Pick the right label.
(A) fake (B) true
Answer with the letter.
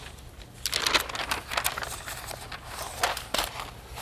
B